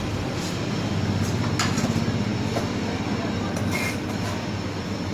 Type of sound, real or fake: real